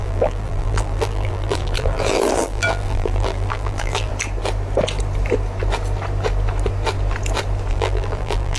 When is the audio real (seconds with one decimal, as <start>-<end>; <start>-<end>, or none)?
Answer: 4.1-7.7